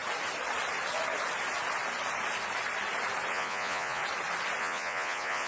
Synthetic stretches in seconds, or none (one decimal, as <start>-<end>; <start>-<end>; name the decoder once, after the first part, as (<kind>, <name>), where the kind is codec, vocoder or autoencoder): 3.3-4.0 (vocoder, Vocos); 4.6-5.5